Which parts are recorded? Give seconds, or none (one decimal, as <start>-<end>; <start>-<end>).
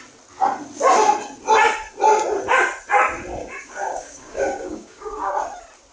0.0-3.4; 5.3-5.9